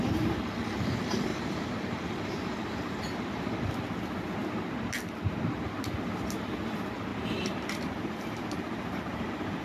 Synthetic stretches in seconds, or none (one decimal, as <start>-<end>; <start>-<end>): 1.3-3.6; 7.1-9.6